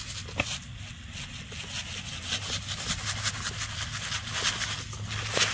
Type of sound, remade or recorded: recorded